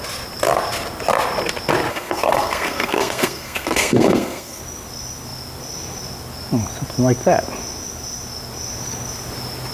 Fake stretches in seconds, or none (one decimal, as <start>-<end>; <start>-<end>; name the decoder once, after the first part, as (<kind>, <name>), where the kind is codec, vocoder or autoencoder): 1.9-4.6 (codec, SNAC)